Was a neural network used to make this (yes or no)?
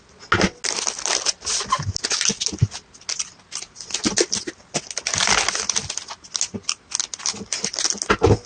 no